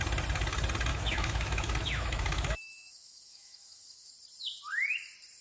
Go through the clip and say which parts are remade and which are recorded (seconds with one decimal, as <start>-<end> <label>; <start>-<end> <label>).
0.0-0.9 recorded; 0.9-4.1 remade; 4.1-5.4 recorded